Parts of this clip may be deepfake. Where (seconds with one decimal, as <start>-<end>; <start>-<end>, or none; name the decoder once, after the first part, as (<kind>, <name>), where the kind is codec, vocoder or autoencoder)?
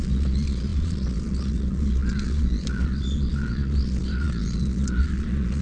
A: 0.0-5.6 (vocoder, Vocos)